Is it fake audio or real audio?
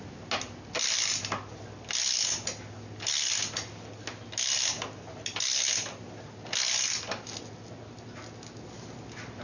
real